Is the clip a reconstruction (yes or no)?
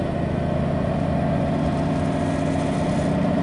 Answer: yes